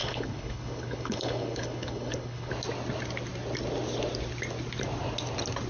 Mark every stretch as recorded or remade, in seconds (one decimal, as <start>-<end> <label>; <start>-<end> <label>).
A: 0.0-2.5 remade; 2.5-5.7 recorded